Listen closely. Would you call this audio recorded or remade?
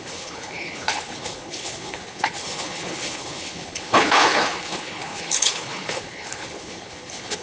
remade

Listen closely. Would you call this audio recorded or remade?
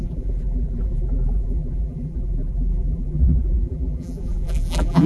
remade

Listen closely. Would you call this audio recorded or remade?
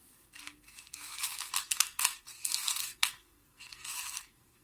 remade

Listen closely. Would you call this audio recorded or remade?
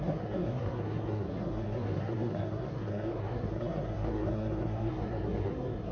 remade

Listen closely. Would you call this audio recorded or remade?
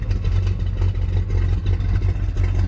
recorded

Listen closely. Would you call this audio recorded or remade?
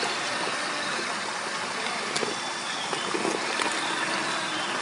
recorded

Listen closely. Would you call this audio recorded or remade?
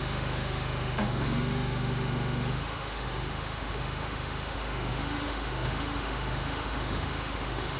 remade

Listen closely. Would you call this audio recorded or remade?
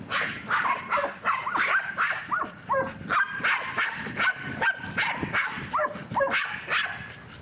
recorded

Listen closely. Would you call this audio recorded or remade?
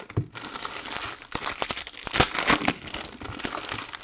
recorded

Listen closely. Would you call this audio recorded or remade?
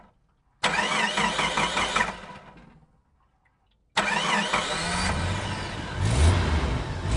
recorded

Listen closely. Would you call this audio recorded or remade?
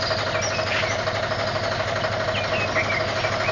recorded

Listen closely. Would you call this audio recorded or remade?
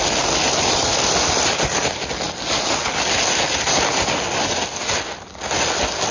recorded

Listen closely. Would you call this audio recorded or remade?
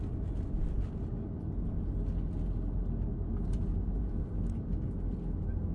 recorded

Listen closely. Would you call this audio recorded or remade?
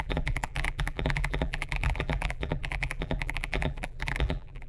remade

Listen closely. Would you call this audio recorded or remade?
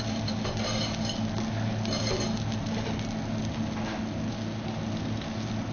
recorded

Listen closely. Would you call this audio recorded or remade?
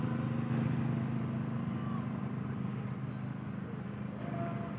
recorded